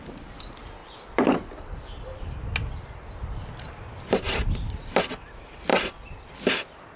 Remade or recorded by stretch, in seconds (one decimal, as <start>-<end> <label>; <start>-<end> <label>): 0.0-7.0 recorded